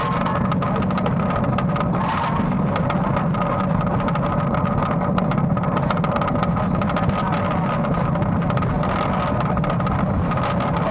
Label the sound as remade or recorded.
recorded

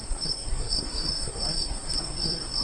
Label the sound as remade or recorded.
remade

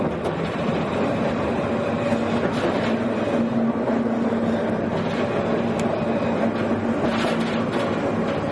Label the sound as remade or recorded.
recorded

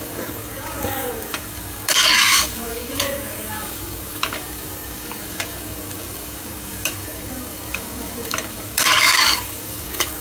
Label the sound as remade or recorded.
remade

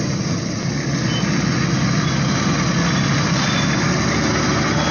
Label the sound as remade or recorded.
recorded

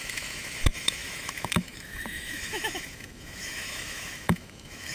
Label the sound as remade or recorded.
remade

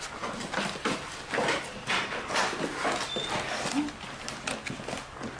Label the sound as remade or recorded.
recorded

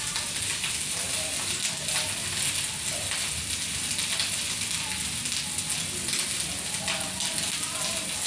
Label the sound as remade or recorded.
recorded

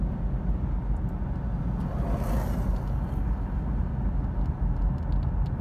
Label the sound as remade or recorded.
recorded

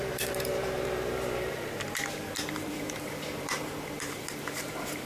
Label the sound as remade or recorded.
remade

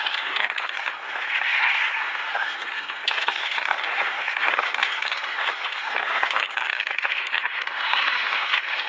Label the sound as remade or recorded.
remade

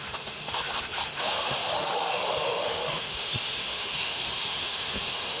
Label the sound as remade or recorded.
remade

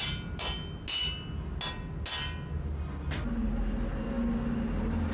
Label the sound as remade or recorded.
recorded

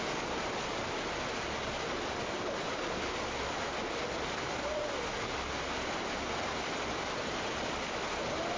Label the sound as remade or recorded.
recorded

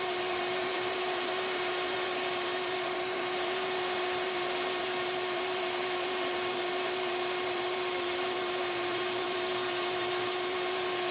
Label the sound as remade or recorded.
remade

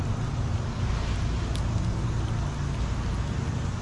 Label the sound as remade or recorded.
recorded